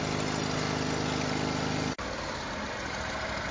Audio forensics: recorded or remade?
recorded